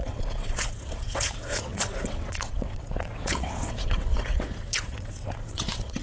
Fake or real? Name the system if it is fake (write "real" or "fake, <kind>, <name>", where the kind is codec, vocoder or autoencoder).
fake, vocoder, WaveNeXt